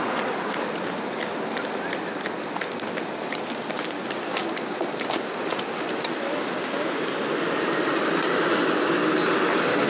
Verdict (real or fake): real